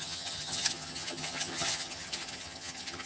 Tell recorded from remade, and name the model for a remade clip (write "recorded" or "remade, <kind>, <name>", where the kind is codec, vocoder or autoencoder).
remade, vocoder, HiFi-GAN